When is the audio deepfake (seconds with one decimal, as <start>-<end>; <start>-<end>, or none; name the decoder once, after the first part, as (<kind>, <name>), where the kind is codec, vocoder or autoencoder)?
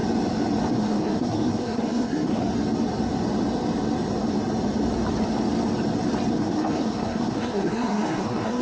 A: 0.7-2.4 (codec, SNAC); 6.3-8.6